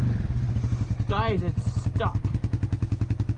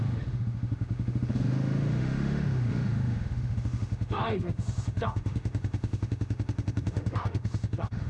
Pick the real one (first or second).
first